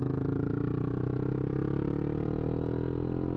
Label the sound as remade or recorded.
recorded